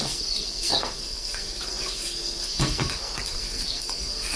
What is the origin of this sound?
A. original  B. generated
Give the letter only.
B